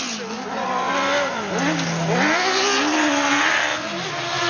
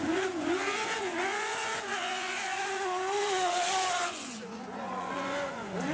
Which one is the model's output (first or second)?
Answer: second